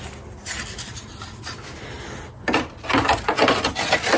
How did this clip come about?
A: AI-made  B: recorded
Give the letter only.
B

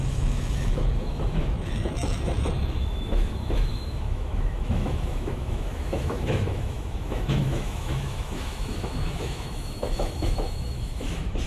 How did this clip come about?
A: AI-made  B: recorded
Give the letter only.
A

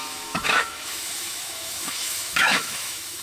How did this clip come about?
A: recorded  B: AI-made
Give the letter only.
B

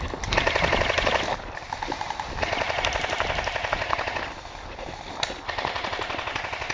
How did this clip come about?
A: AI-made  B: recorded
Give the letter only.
B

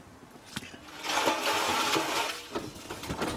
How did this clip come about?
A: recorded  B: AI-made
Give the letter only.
A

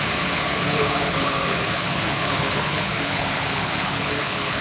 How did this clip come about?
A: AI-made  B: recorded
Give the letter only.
A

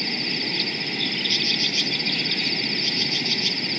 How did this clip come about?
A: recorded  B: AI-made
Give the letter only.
A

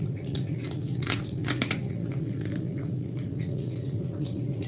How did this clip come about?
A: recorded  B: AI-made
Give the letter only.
B